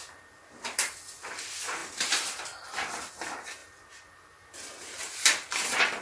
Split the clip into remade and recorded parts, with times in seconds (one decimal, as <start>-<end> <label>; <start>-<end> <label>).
0.0-1.8 recorded; 1.8-3.1 remade; 3.1-6.0 recorded